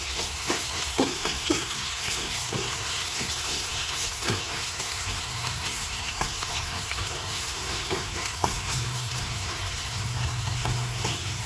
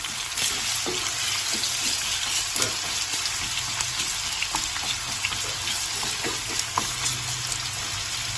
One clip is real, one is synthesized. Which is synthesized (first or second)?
first